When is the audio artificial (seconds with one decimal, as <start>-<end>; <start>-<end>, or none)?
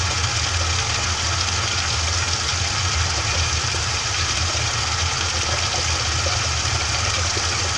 2.5-4.8; 6.4-7.3